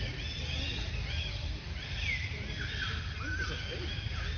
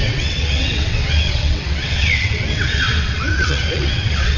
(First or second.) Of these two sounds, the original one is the first